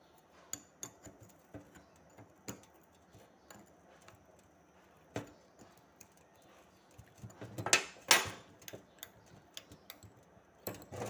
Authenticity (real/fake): real